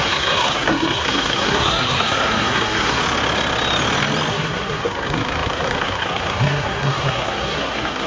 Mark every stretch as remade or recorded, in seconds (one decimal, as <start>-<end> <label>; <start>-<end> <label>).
0.0-3.0 remade; 3.0-4.3 recorded; 4.3-8.1 remade